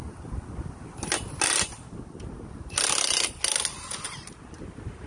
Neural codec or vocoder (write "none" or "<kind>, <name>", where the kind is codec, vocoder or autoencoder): none